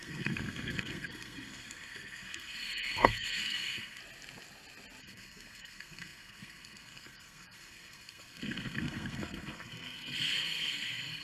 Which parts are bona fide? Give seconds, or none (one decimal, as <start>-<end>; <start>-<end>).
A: 4.0-5.0